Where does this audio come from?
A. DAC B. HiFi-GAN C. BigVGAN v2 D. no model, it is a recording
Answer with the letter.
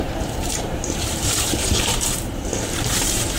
C